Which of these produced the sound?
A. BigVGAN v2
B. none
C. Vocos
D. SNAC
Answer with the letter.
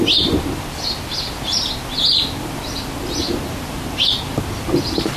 B